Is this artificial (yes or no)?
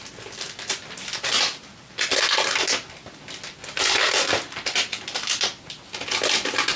no